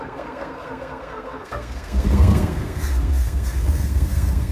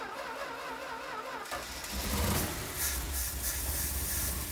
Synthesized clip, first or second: first